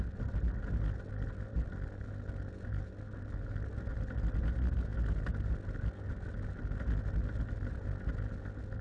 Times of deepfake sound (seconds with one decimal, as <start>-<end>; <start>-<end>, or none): none